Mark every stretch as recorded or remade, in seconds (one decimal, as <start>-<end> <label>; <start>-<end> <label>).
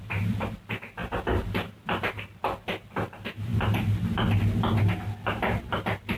0.0-1.0 recorded; 1.0-2.4 remade; 2.4-6.2 recorded